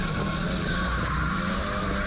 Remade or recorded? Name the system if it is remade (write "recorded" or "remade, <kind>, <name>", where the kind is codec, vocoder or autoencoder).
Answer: recorded